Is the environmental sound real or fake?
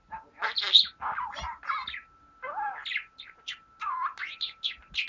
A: real